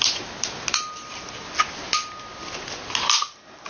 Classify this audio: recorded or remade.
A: recorded